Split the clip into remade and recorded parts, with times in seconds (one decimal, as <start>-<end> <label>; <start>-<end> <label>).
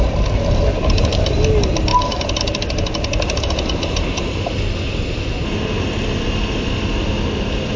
0.0-7.8 recorded